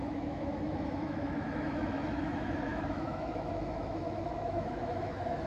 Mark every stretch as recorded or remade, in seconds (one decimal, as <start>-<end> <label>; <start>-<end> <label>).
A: 0.0-5.5 remade

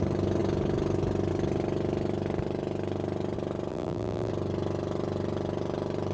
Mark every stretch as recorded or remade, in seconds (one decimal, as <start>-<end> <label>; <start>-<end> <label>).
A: 0.0-3.7 recorded; 3.7-4.3 remade; 4.3-6.1 recorded